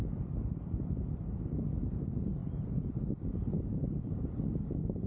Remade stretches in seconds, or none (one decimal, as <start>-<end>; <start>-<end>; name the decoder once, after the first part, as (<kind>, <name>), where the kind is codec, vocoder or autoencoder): 3.4-4.2 (vocoder, BigVGAN v2)